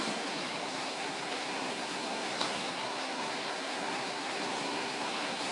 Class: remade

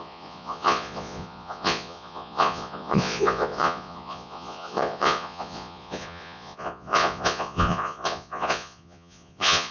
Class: remade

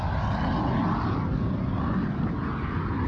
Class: recorded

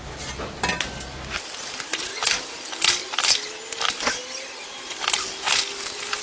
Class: recorded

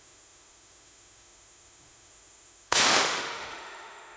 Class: remade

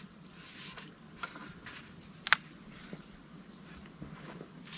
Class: recorded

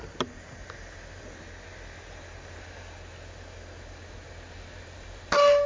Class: recorded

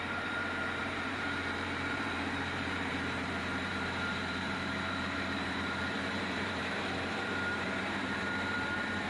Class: remade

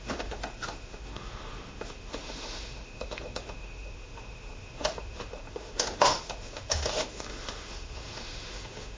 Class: remade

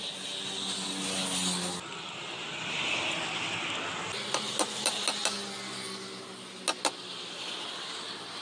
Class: recorded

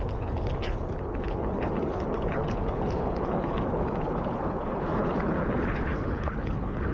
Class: remade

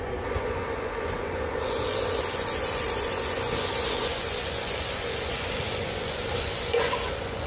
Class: remade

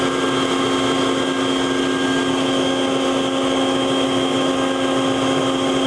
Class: recorded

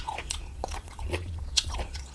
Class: remade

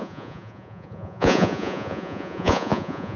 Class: remade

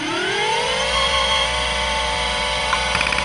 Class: remade